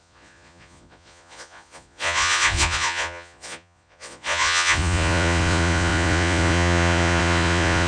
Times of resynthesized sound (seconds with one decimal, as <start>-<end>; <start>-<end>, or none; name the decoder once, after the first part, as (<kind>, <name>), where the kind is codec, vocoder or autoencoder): 0.0-7.9 (vocoder, Vocos)